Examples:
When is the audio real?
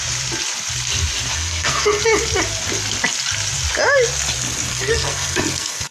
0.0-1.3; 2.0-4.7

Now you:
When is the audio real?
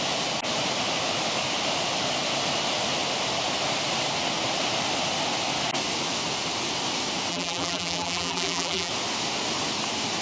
0.0-7.3; 8.9-10.2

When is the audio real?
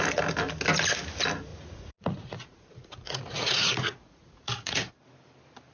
0.0-1.5; 4.9-5.7